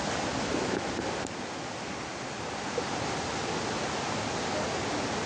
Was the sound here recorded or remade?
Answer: recorded